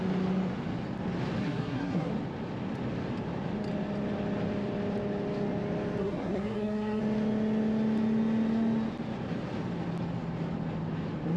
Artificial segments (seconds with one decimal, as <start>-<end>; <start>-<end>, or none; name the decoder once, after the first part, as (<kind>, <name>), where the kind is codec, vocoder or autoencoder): 1.4-2.1 (codec, SNAC); 6.0-7.0